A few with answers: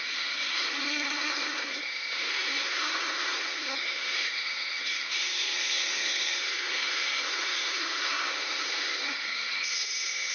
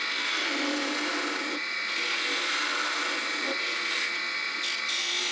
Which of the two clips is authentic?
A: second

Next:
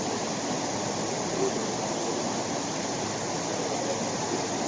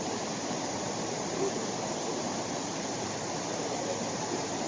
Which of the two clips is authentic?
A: first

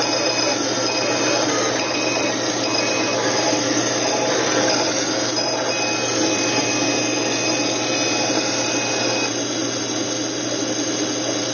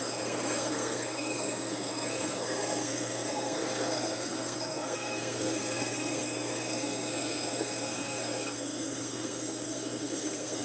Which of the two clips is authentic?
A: first